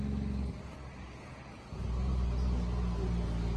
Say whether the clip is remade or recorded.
recorded